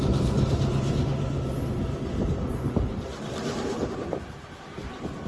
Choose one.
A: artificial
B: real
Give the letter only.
A